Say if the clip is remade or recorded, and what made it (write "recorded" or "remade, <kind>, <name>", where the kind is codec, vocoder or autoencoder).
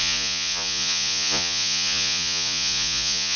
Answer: remade, vocoder, Vocos